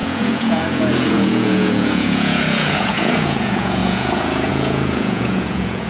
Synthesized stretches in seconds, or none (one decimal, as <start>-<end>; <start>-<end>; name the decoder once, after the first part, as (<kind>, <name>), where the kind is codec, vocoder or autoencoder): 0.0-5.9 (vocoder, Vocos)